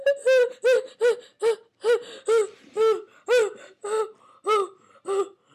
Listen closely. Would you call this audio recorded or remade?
recorded